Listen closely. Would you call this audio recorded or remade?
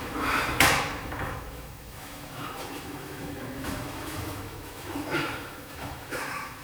remade